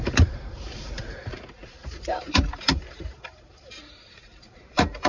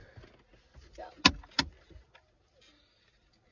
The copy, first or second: first